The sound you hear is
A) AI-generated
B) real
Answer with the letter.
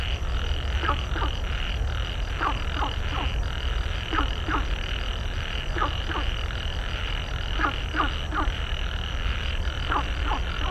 B